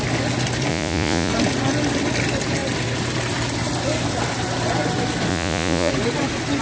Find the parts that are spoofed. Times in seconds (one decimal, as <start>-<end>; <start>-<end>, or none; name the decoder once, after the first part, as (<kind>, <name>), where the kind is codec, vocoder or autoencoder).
0.7-1.3 (vocoder, Vocos); 5.3-5.9